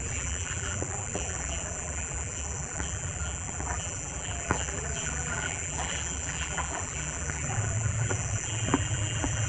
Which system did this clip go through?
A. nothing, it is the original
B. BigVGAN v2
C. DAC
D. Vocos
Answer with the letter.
B